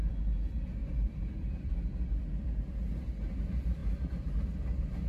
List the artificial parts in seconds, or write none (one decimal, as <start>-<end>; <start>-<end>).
0.8-1.7